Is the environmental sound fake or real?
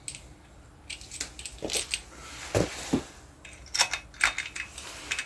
real